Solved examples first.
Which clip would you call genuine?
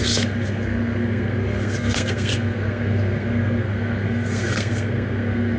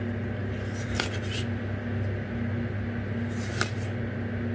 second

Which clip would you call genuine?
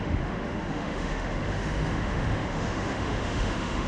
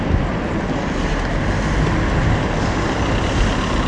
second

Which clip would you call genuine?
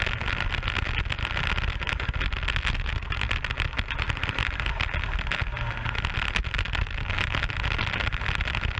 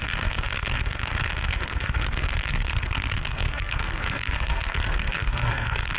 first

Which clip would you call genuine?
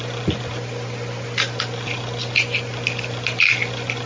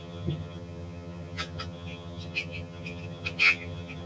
first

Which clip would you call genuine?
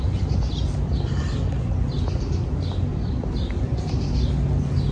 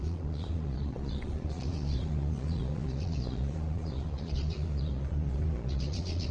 first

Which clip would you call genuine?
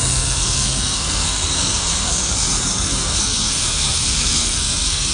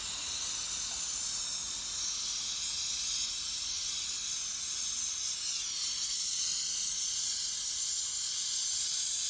second